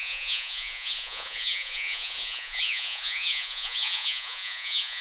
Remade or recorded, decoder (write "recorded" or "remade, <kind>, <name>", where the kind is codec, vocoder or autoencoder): remade, vocoder, Vocos